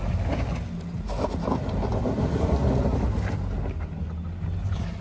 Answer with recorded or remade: recorded